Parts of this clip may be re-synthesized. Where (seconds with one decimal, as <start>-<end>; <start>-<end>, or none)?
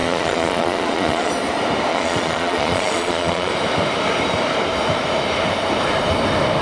0.0-1.3; 1.9-3.5